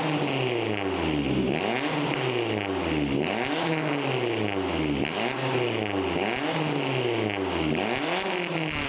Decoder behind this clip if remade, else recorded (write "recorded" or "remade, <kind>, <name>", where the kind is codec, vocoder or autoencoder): recorded